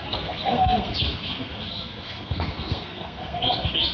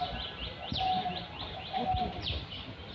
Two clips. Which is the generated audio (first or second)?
first